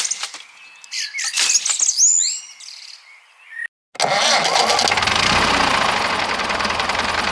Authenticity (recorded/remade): recorded